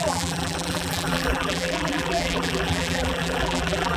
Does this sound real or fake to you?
fake